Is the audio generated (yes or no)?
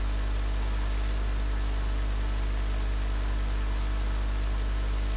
no